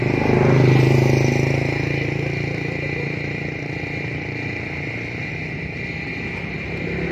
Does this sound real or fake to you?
real